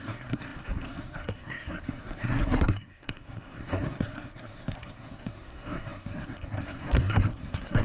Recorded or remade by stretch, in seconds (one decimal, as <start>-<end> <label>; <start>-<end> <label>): 0.0-7.8 remade